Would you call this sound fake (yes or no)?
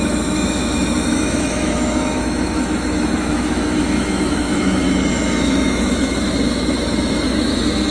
yes